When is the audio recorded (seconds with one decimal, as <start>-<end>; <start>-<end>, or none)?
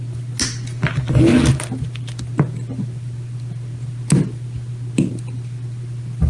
0.0-6.3